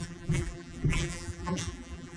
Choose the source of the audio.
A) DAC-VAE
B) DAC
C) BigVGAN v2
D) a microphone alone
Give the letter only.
C